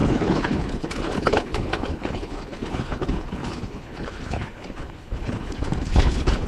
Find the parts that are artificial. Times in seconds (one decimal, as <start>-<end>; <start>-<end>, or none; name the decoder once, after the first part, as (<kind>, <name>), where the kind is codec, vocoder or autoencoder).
0.0-6.5 (codec, HILCodec)